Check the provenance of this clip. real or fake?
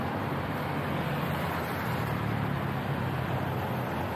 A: real